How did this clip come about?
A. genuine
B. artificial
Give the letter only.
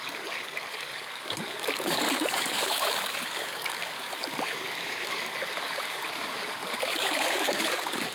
B